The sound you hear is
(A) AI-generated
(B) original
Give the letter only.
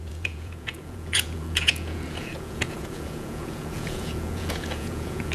A